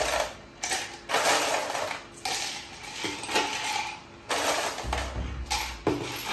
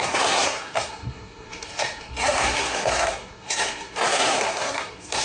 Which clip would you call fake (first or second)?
second